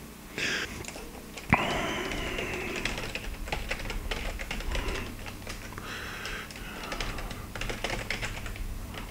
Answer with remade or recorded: recorded